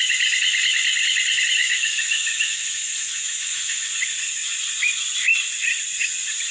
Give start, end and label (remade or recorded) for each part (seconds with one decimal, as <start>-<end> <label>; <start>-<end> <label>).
0.0-1.6 recorded; 1.6-3.9 remade; 3.9-6.5 recorded